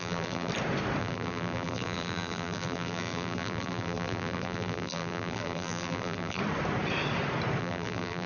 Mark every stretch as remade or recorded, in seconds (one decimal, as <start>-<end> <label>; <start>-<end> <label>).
0.0-0.5 remade; 0.5-1.0 recorded; 1.0-6.4 remade; 6.4-7.6 recorded; 7.6-8.3 remade